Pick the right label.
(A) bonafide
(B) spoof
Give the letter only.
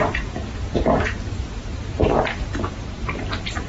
B